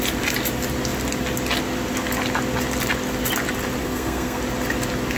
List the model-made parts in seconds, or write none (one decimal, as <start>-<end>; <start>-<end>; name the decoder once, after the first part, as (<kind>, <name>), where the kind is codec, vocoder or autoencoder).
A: 3.8-4.4 (codec, SNAC)